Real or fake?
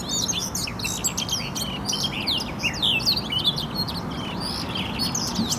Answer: real